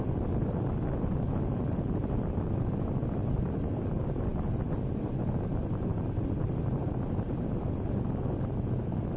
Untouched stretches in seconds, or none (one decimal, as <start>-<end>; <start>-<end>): 0.0-9.2